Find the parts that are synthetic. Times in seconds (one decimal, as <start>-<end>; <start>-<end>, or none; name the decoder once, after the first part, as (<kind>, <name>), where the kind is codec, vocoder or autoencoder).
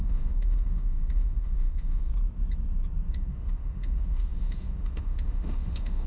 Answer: 0.0-2.1 (autoencoder, DAC-VAE); 3.1-6.1